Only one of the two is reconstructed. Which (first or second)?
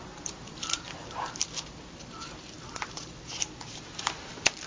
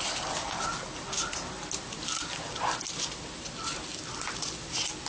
first